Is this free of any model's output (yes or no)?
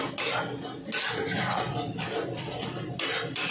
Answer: yes